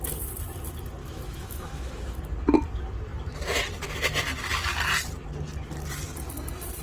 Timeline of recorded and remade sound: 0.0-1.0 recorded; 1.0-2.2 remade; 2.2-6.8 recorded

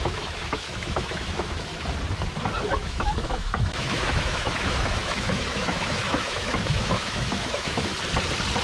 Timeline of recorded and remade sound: 0.0-1.7 remade; 1.7-2.7 recorded; 2.7-7.9 remade; 7.9-8.6 recorded